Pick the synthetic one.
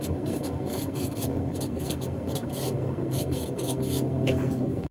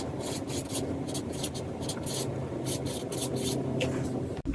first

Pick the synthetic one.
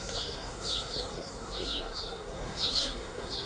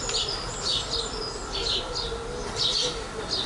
first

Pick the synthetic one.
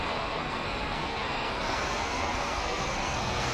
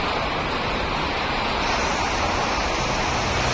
first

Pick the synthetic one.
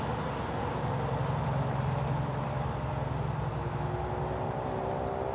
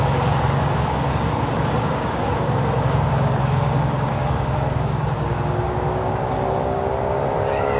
second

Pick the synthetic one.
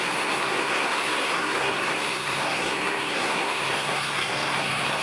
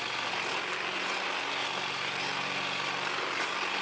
first